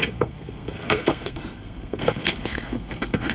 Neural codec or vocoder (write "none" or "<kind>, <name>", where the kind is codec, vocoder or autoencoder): codec, SNAC